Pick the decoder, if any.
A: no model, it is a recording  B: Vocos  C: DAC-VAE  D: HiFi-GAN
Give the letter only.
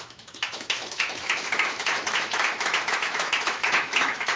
C